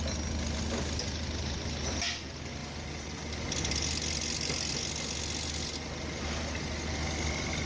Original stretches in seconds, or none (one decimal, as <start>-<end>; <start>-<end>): 0.0-7.7